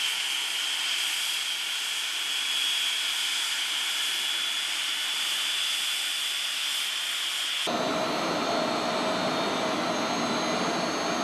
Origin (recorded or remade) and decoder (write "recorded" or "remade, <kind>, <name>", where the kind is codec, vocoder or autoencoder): recorded